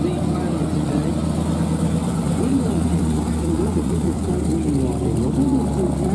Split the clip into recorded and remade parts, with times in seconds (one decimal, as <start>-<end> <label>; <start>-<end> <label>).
0.0-0.6 recorded; 0.6-1.1 remade; 1.1-2.0 recorded; 2.0-4.3 remade; 4.3-6.1 recorded